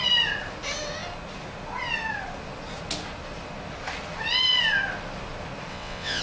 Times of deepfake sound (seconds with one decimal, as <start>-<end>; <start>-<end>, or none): 5.7-6.2